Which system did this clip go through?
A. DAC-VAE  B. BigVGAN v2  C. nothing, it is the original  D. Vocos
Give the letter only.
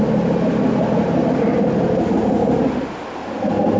C